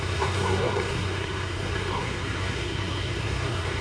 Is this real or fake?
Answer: fake